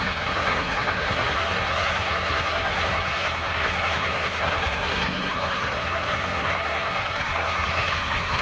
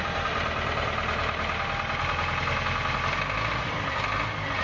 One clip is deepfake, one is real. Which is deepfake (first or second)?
first